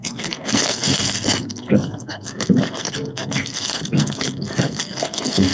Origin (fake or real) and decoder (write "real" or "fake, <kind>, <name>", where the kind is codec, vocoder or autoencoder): fake, codec, SNAC